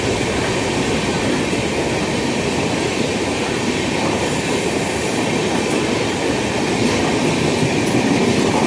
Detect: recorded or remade remade